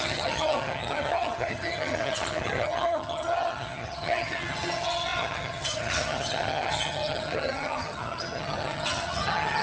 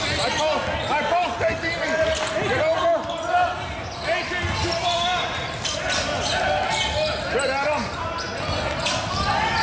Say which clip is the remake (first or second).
first